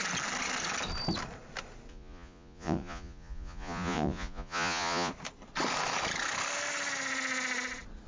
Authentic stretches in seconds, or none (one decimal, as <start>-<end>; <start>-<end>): 0.0-1.9; 5.1-8.1